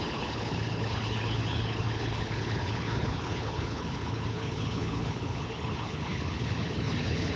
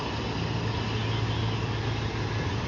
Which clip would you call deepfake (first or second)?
first